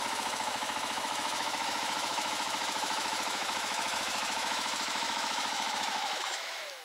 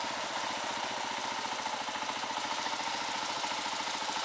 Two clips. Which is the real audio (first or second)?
second